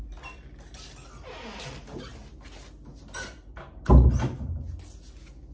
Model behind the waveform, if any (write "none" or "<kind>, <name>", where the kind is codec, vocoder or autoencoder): none